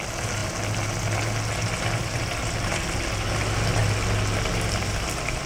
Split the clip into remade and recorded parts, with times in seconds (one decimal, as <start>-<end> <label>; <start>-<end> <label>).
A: 0.0-5.5 recorded